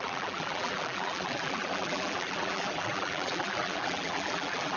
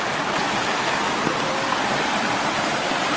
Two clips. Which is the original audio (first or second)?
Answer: second